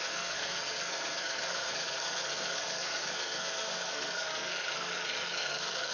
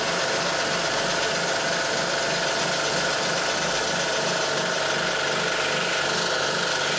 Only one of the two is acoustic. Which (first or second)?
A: second